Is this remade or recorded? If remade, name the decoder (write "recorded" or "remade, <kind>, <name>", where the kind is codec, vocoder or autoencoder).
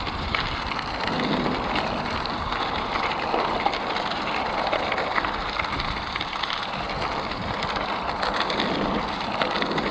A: remade, vocoder, BigVGAN v2